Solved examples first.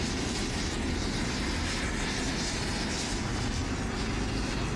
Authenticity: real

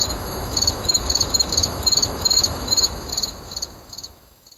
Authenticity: fake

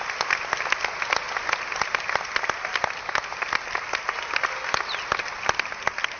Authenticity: real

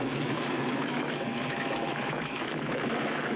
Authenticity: fake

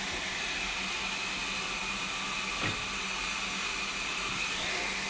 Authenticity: real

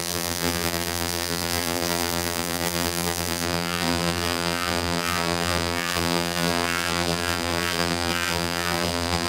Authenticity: fake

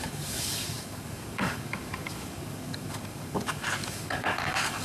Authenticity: fake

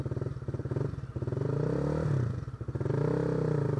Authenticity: real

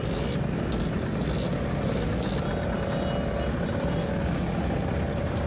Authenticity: real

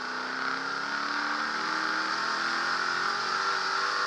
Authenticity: real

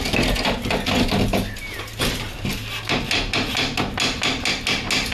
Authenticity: real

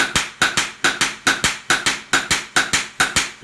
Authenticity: real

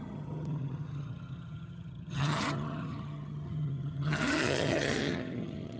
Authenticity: fake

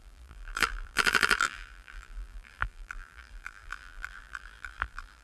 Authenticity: fake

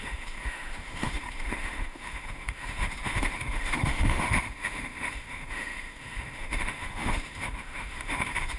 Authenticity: fake